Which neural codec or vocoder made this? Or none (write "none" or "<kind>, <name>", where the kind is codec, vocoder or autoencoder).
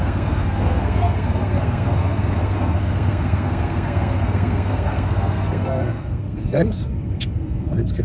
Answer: codec, SNAC